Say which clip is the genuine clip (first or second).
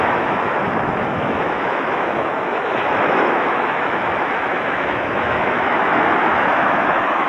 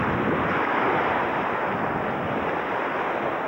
second